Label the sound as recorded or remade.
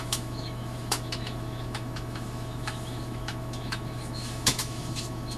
remade